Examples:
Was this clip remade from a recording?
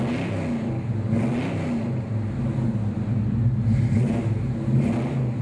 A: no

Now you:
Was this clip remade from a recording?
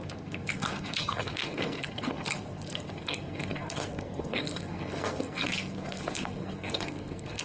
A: yes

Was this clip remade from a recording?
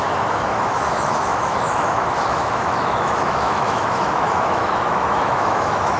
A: yes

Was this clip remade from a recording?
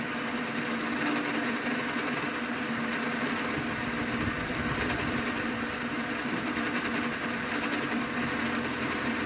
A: no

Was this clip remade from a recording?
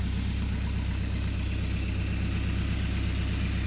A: no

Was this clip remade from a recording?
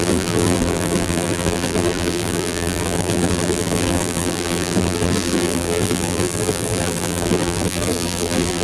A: yes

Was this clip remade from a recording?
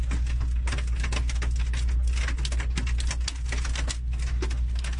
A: no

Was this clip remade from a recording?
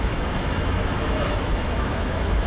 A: yes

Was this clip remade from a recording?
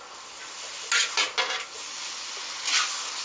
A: no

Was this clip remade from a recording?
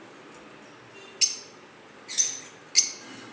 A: no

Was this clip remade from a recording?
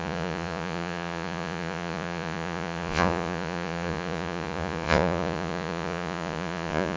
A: yes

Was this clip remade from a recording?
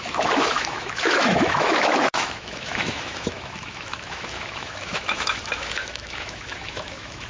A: yes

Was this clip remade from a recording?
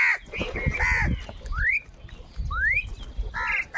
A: no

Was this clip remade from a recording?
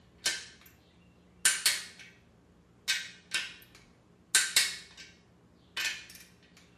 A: no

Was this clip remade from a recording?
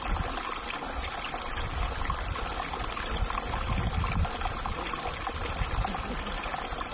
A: no